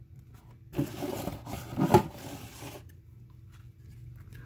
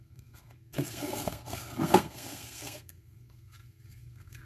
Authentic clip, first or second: first